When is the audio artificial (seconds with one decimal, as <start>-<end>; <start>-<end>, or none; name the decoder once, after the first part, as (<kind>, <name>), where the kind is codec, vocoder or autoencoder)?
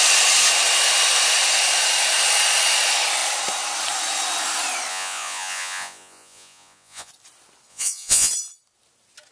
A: 4.9-7.1 (vocoder, Vocos); 7.7-8.3